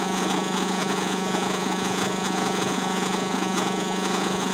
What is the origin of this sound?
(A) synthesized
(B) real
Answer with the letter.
A